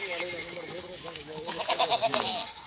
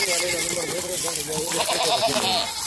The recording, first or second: second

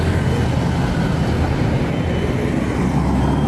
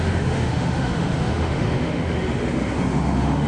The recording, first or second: first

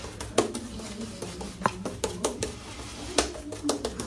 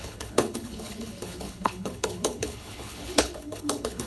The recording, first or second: first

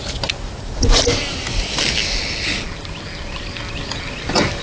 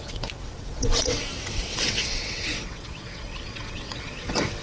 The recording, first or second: first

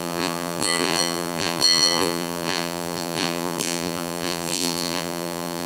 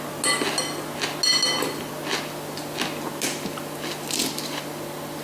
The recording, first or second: second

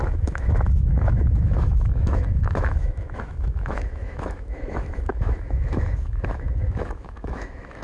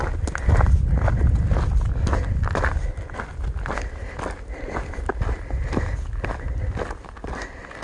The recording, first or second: second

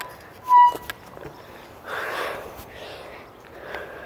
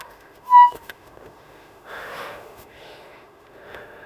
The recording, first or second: first